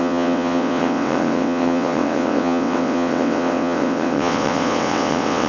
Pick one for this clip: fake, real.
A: fake